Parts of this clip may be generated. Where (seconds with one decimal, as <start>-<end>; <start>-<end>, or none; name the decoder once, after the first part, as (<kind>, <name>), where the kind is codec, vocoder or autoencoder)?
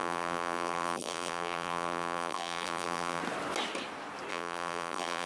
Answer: 0.0-3.2 (vocoder, BigVGAN v2); 4.3-5.3